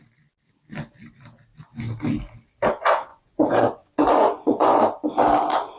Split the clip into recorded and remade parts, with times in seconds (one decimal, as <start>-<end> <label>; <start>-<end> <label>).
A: 0.0-3.1 recorded; 3.1-4.8 remade; 4.8-5.8 recorded